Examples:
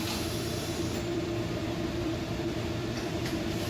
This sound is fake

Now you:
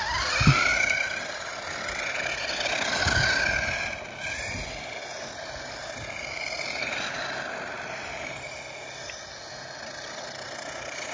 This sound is real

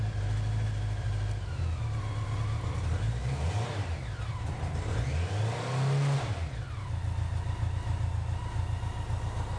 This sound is real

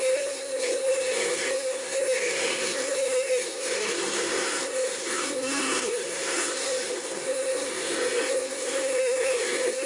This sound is fake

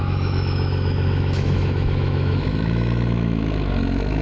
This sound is fake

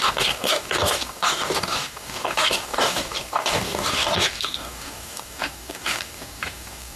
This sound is fake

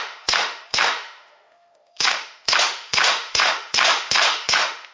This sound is fake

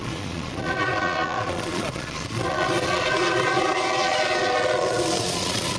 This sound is fake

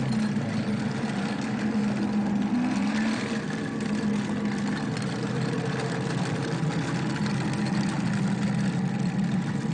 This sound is real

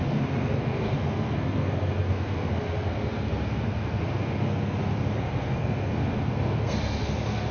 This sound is fake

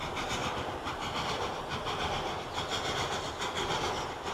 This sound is real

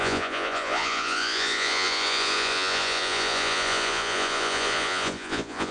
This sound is fake